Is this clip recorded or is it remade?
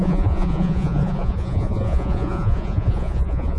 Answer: remade